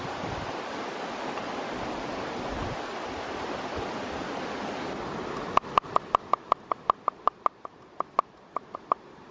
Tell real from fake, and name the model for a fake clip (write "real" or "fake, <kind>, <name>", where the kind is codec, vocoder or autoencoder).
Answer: real